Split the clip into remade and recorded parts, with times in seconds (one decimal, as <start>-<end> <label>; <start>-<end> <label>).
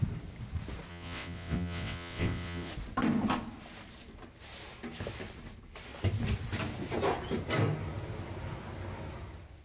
0.0-0.9 recorded; 0.9-2.7 remade; 2.7-9.6 recorded